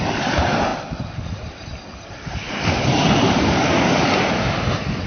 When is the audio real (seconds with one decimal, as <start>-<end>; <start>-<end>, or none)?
0.0-3.0; 4.1-5.1